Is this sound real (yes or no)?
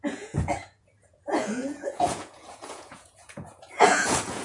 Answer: no